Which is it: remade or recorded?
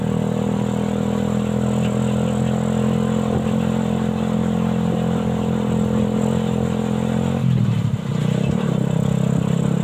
recorded